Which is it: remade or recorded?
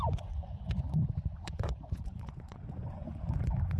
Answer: remade